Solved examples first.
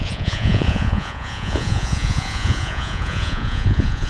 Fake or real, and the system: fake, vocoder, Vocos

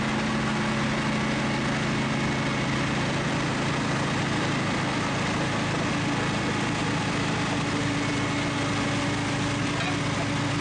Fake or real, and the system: real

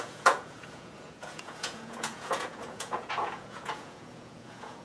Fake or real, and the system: fake, vocoder, Vocos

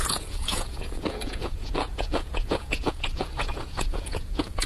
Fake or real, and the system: fake, vocoder, Vocos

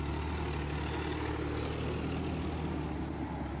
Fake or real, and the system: real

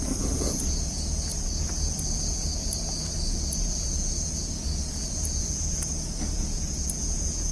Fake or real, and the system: fake, vocoder, Vocos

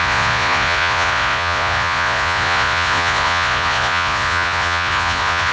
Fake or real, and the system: fake, vocoder, Vocos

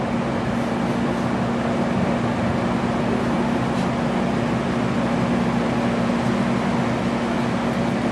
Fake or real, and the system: real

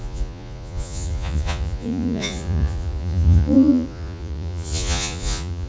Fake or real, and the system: fake, vocoder, Vocos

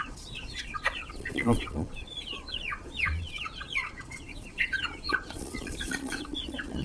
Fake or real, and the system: fake, vocoder, Vocos